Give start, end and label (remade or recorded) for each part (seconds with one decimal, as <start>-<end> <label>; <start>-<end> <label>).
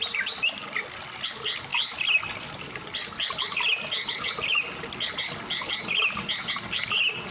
0.0-7.3 recorded